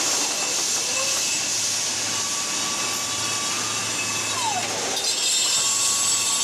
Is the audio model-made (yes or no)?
no